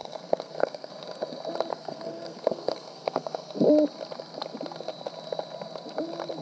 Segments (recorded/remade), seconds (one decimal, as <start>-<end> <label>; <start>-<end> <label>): 0.0-0.9 remade; 0.9-1.7 recorded; 1.7-3.6 remade; 3.6-6.4 recorded